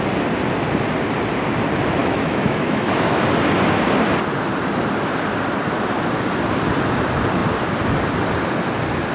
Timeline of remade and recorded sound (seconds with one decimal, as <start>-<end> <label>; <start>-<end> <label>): 0.0-2.0 recorded; 2.0-3.3 remade; 3.3-9.1 recorded